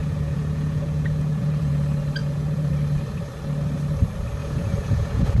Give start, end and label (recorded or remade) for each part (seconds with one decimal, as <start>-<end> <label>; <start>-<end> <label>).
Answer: 0.0-1.7 remade; 1.7-2.2 recorded; 2.2-2.7 remade; 2.7-4.4 recorded; 4.4-5.4 remade